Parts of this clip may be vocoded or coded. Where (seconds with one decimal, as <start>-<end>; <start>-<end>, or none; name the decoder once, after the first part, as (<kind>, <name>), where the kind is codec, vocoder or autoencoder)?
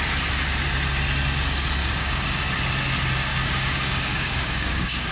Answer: 1.8-2.5 (codec, DAC); 3.3-5.1